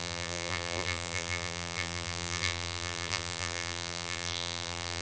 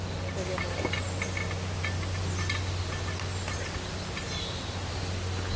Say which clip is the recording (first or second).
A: second